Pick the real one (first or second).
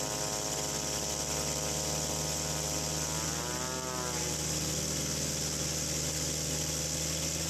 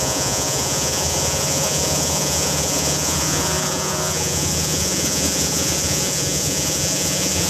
first